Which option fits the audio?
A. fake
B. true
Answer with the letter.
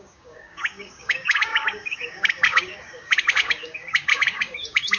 A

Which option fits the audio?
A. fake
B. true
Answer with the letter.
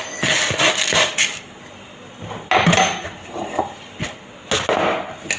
B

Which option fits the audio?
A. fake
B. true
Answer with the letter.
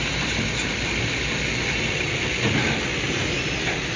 B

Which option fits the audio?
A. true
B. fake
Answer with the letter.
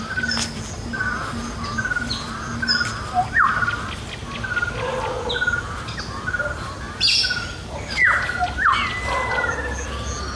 A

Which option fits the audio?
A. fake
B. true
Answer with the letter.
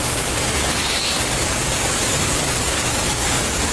A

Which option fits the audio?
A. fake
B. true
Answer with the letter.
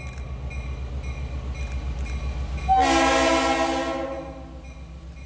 B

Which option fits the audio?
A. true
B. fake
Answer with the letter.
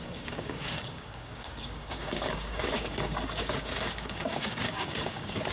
B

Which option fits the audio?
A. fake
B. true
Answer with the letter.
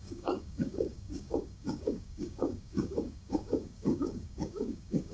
A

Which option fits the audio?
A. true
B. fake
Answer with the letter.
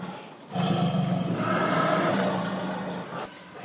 A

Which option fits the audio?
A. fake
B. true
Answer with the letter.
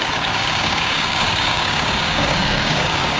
A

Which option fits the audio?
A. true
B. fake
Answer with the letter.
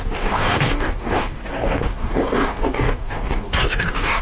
B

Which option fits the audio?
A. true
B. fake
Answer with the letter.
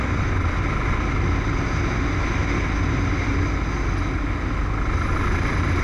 A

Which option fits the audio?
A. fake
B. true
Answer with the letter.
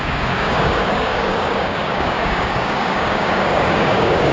A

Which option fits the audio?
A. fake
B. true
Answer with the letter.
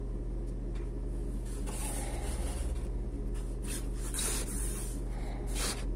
B